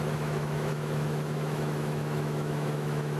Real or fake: fake